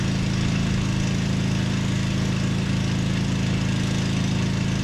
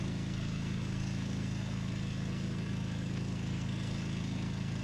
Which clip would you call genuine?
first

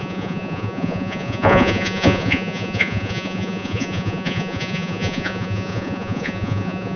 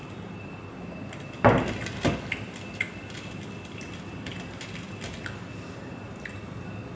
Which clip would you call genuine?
second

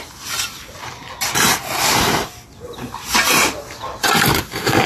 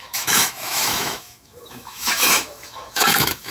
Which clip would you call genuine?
first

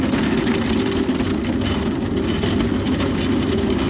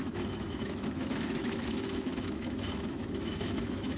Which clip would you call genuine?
first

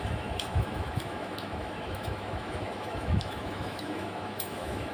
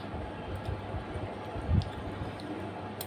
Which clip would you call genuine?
second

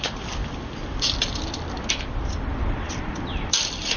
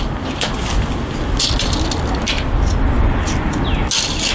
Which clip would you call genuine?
second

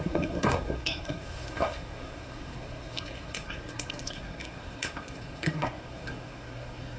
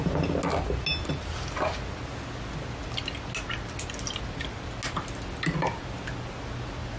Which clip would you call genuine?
second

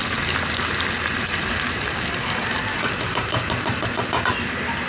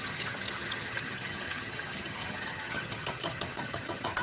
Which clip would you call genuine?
first